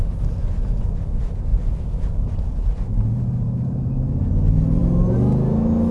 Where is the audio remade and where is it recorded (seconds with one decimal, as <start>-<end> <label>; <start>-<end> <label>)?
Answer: 0.0-1.5 recorded; 1.5-4.3 remade; 4.3-5.9 recorded